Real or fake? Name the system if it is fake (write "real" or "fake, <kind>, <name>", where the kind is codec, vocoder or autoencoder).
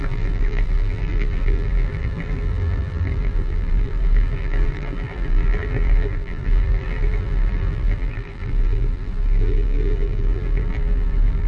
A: fake, vocoder, BigVGAN v2